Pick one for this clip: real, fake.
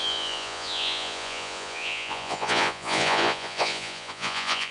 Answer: fake